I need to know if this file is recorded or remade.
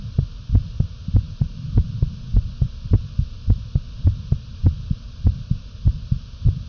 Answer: recorded